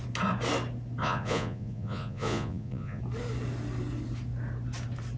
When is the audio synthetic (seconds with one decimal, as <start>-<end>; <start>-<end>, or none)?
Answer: 1.0-3.0